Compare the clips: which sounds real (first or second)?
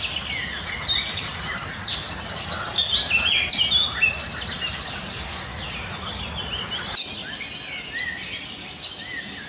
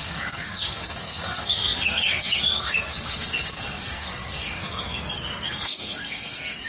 first